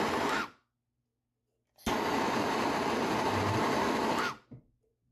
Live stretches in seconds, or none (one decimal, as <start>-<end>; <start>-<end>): 0.0-5.1